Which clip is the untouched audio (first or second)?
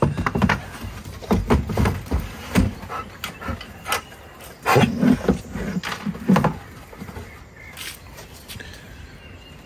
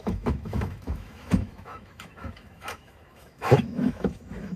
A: first